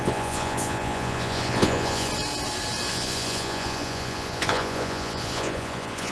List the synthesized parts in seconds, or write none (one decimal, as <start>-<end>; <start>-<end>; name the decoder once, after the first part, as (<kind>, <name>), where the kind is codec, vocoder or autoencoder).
0.0-2.1 (vocoder, Vocos); 2.9-6.1